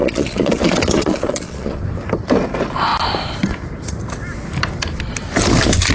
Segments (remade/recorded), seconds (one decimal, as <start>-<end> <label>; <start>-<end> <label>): 0.0-1.8 remade; 1.8-5.9 recorded